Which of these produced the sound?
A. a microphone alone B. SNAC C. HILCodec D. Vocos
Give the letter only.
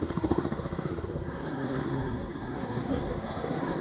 B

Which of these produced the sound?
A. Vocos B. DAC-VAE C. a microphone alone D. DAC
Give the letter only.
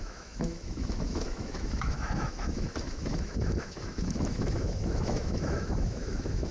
B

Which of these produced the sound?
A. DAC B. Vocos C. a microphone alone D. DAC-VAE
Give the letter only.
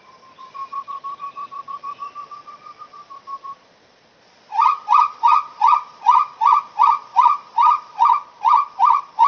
B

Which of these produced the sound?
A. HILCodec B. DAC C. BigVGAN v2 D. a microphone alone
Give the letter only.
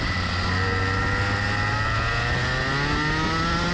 D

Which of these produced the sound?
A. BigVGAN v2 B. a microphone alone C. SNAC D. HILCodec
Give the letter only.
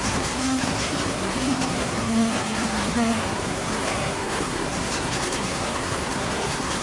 C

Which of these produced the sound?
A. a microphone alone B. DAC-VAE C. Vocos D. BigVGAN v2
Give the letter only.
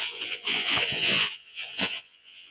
C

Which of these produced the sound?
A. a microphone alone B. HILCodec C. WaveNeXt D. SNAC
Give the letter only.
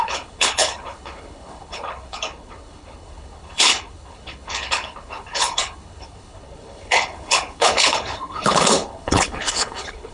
B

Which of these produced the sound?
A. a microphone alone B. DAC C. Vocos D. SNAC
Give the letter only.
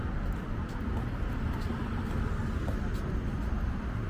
A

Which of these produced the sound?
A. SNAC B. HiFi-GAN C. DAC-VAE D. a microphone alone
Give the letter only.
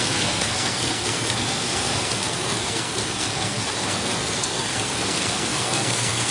A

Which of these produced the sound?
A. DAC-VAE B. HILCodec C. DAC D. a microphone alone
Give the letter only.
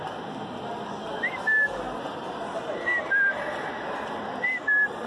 D